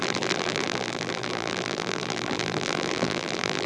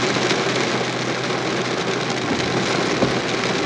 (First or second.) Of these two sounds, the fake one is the first